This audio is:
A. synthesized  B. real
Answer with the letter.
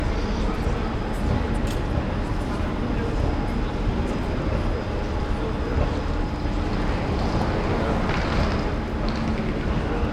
B